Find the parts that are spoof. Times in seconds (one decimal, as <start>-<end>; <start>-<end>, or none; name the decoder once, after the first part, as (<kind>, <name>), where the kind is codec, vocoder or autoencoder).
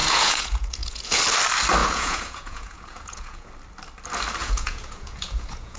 0.0-1.2 (vocoder, Vocos); 1.8-3.5; 4.4-5.8